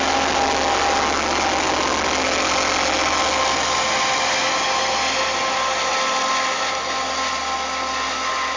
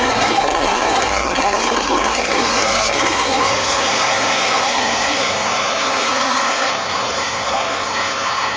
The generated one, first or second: second